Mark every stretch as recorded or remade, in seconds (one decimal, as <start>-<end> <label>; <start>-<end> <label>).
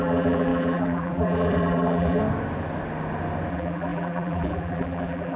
0.0-2.2 remade; 2.2-3.5 recorded; 3.5-5.4 remade